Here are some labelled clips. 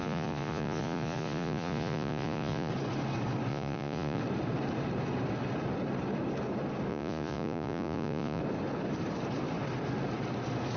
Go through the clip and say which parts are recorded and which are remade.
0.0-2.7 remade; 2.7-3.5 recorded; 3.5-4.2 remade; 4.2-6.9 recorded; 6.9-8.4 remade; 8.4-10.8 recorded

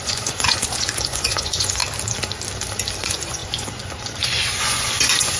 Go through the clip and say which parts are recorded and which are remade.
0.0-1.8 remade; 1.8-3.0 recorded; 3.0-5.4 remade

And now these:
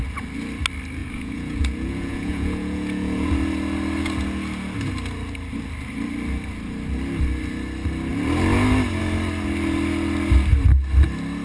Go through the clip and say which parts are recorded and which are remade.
0.0-1.0 recorded; 1.0-3.3 remade; 3.3-11.4 recorded

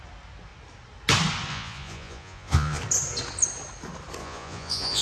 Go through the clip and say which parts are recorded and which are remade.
0.0-1.5 recorded; 1.5-2.8 remade; 2.8-4.2 recorded; 4.2-5.0 remade

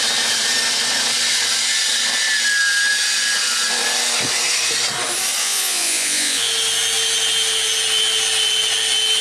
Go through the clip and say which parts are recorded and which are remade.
0.0-5.4 recorded; 5.4-6.5 remade; 6.5-9.2 recorded

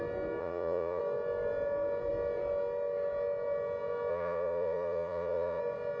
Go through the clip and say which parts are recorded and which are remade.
0.0-0.4 recorded; 0.4-1.0 remade; 1.0-4.1 recorded; 4.1-5.6 remade; 5.6-6.0 recorded

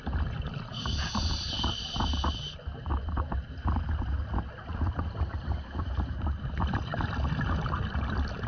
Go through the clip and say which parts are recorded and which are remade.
0.0-8.5 recorded